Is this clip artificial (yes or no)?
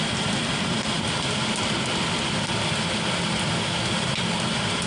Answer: no